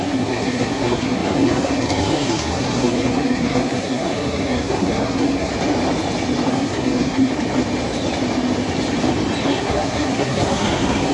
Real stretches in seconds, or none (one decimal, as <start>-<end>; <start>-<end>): 5.5-6.5; 7.3-9.4